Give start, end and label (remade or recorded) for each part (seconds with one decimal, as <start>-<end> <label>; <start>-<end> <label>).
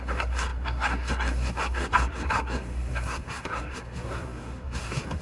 0.0-5.2 remade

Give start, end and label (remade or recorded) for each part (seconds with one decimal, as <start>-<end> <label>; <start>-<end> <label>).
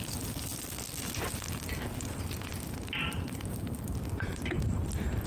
0.0-5.3 recorded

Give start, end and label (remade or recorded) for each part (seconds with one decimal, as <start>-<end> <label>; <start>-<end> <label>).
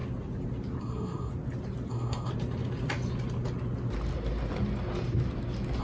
0.0-0.8 recorded; 0.8-1.3 remade; 1.3-1.9 recorded; 1.9-2.3 remade; 2.3-5.8 recorded